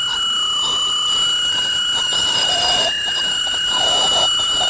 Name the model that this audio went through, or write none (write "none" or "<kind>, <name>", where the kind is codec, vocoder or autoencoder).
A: vocoder, BigVGAN v2